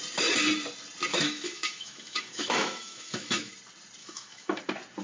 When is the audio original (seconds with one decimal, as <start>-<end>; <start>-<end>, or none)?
0.0-1.1; 3.5-4.0; 4.6-5.0